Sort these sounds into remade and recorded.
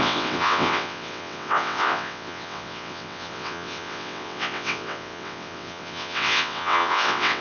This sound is remade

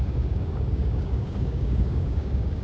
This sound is remade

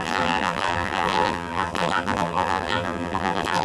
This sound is remade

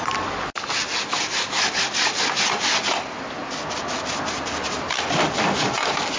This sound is recorded